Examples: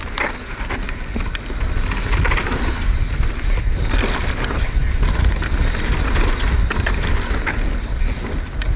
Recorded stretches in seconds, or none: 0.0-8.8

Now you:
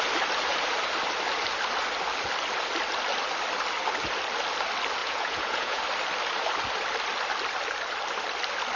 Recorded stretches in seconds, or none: 0.0-5.0; 5.8-8.8

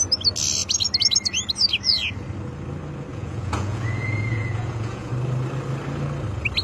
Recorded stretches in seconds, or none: 0.0-3.1; 5.1-6.6

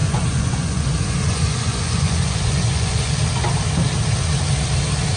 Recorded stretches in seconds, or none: 3.1-5.2

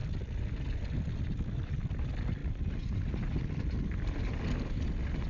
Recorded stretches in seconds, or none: 0.0-5.3